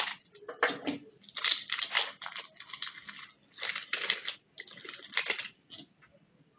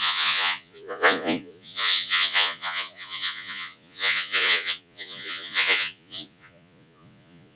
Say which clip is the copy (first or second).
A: second